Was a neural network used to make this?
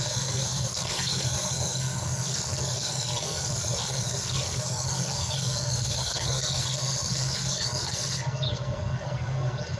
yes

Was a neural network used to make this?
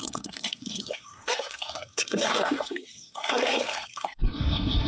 yes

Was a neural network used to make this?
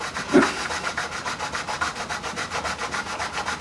no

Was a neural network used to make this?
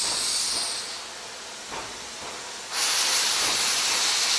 no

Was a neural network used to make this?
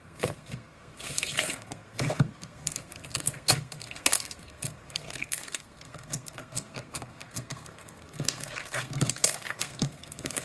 yes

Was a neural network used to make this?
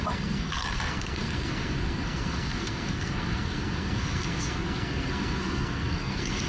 yes